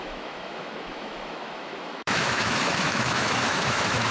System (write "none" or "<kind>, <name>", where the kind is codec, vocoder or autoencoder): autoencoder, DAC-VAE